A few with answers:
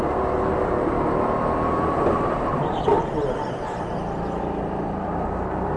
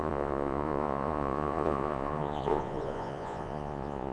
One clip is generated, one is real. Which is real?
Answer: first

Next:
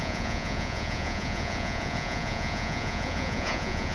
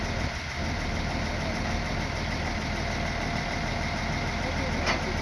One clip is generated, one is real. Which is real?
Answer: second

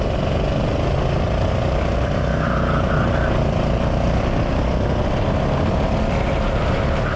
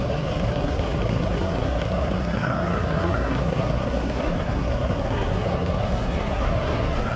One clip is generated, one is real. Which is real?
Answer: first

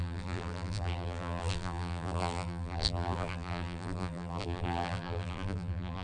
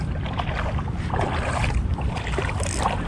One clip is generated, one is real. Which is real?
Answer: second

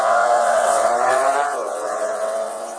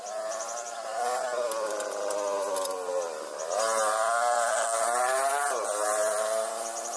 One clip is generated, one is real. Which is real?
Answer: second